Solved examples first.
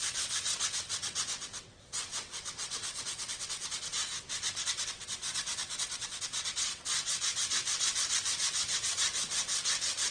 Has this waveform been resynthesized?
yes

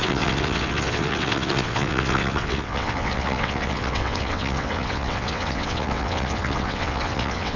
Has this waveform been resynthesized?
yes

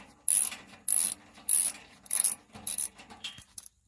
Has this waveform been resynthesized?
no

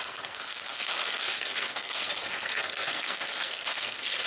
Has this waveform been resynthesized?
yes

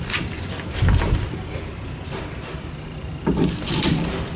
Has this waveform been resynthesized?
yes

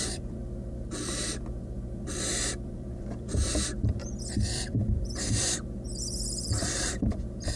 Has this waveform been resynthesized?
yes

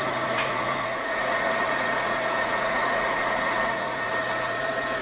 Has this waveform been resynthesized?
yes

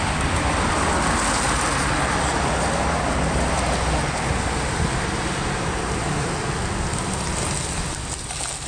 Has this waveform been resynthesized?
no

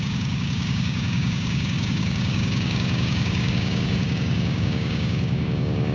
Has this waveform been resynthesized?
yes